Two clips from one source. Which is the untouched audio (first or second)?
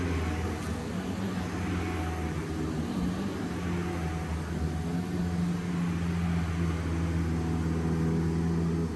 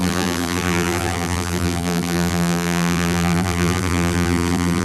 first